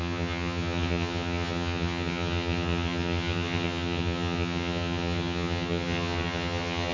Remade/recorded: remade